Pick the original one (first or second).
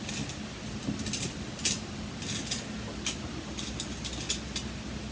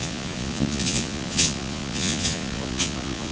first